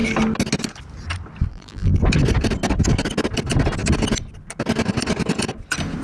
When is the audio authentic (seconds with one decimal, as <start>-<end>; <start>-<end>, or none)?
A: 0.0-1.5; 2.0-6.0